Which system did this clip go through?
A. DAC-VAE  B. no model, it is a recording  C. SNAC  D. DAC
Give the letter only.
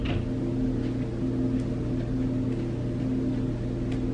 B